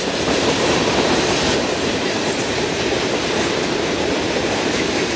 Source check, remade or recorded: remade